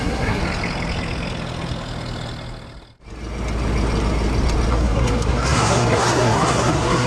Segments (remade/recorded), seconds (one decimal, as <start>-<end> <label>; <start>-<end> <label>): 0.0-0.4 remade; 0.4-4.7 recorded; 4.7-7.1 remade